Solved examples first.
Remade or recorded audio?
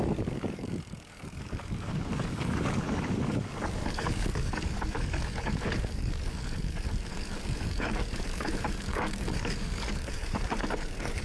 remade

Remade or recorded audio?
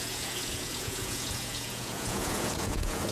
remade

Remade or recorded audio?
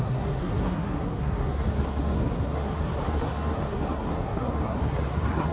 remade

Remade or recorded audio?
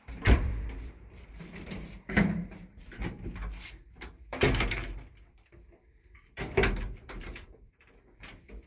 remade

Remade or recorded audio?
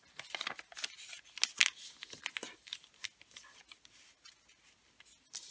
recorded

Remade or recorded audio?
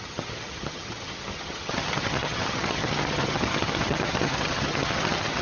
remade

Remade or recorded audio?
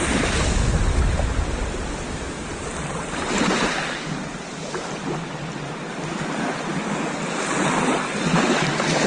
recorded